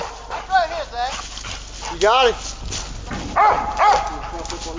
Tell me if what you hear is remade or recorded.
recorded